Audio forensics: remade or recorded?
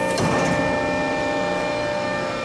remade